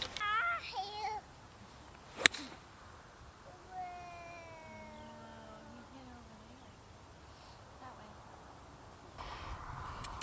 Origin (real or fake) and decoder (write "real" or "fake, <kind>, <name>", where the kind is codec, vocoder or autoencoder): real